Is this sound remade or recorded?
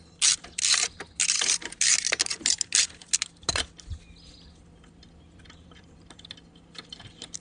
recorded